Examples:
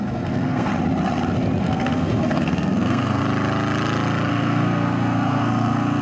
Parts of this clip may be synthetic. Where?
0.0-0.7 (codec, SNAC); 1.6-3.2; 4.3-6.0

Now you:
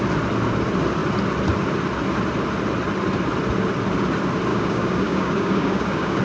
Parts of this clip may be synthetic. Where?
4.5-6.2 (codec, DAC)

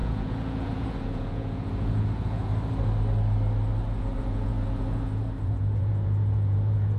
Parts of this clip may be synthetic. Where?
0.0-2.5 (vocoder, Vocos); 4.0-7.0

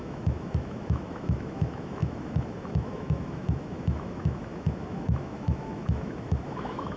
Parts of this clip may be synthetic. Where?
0.0-7.0 (autoencoder, DAC-VAE)

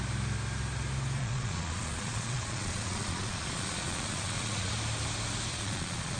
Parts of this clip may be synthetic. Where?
1.2-4.7 (vocoder, Vocos); 5.5-6.2

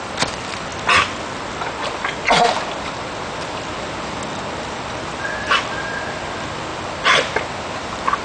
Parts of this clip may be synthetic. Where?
none

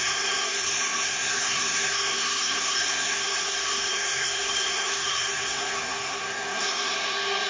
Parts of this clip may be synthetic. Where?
0.0-7.5 (codec, SNAC)

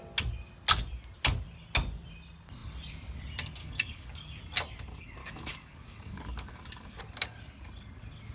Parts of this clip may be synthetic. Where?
3.6-4.4 (codec, DAC); 5.2-7.0